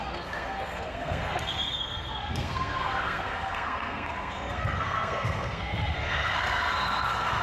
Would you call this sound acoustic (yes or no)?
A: no